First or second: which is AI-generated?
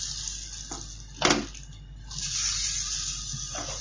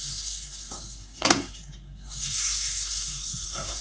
second